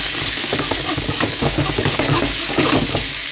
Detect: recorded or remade remade